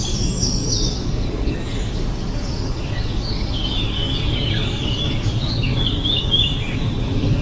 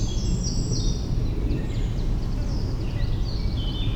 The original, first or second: second